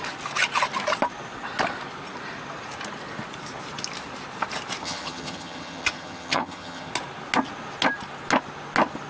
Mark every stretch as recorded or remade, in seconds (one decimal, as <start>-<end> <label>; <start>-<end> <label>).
0.0-4.8 recorded; 4.8-6.9 remade; 6.9-9.1 recorded